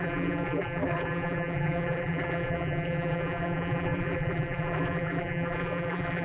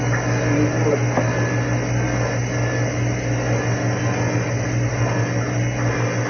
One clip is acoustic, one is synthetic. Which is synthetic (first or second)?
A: first